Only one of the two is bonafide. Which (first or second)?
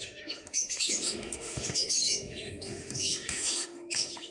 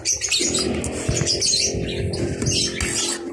second